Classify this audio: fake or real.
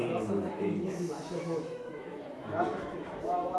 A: fake